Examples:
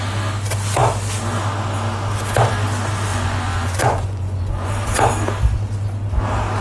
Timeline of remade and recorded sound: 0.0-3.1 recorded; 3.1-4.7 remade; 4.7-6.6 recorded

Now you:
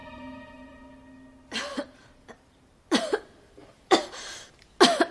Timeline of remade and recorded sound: 0.0-0.8 remade; 0.8-1.7 recorded; 1.7-4.5 remade; 4.5-5.1 recorded

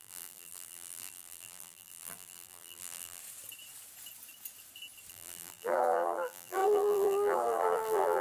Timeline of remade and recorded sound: 0.0-3.2 remade; 3.2-5.1 recorded; 5.1-8.2 remade

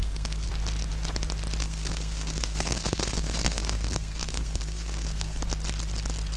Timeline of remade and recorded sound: 0.0-0.5 remade; 0.5-1.6 recorded; 1.6-5.4 remade; 5.4-6.4 recorded

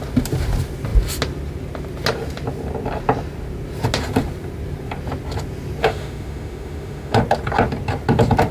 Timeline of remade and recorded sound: 0.0-5.8 recorded; 5.8-7.2 remade; 7.2-8.5 recorded

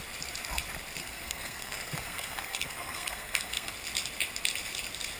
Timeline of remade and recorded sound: 0.0-1.0 recorded; 1.0-3.7 remade; 3.7-5.2 recorded

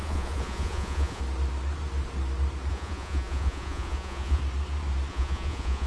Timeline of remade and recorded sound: 0.0-1.2 remade; 1.2-2.7 recorded; 2.7-4.4 remade; 4.4-5.1 recorded; 5.1-5.9 remade